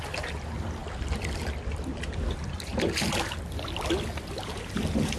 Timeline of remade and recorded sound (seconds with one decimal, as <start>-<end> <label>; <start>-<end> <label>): 0.0-5.2 recorded